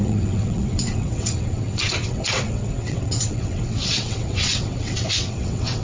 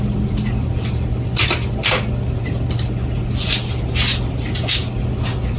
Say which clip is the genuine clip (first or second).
second